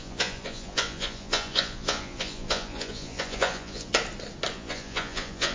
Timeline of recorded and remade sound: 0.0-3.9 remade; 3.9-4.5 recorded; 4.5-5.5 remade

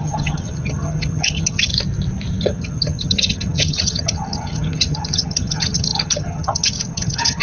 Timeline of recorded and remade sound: 0.0-1.7 remade; 1.7-2.4 recorded; 2.4-7.4 remade

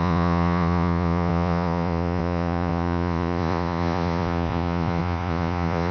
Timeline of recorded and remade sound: 0.0-5.9 remade

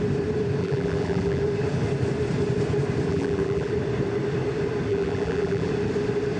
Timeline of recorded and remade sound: 0.0-0.6 recorded; 0.6-1.4 remade; 1.4-3.1 recorded; 3.1-3.7 remade; 3.7-4.9 recorded; 4.9-5.7 remade; 5.7-6.4 recorded

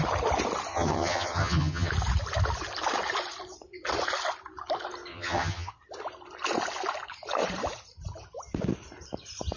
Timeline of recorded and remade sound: 0.0-0.7 recorded; 0.7-1.9 remade; 1.9-5.1 recorded; 5.1-5.7 remade; 5.7-9.6 recorded

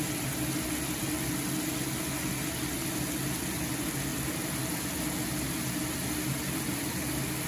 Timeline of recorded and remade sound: 0.0-7.5 recorded